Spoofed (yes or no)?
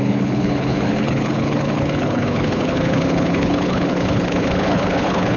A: yes